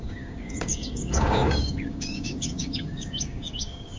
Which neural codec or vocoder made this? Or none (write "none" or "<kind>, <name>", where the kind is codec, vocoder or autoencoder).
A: codec, DAC